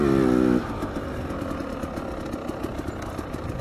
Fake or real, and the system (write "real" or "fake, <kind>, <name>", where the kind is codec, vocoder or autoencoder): real